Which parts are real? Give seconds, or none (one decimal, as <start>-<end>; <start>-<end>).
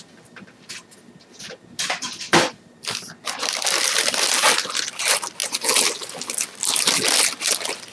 0.0-7.9